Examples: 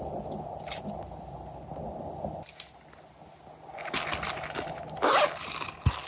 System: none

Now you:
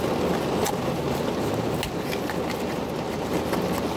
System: none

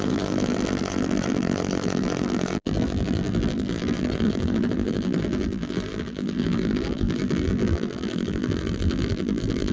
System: vocoder, BigVGAN v2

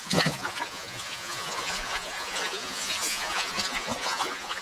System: vocoder, Vocos